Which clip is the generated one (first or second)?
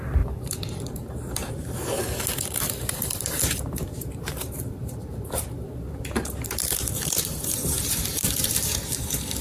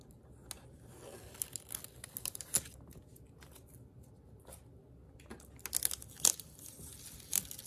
first